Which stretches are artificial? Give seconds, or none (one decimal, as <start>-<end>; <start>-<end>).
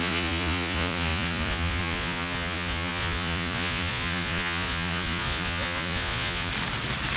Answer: 0.0-6.5